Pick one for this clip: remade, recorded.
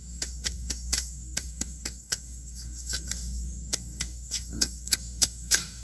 remade